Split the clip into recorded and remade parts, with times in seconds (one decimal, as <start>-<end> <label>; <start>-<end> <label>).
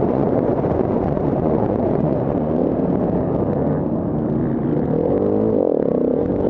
0.0-2.6 remade; 2.6-6.5 recorded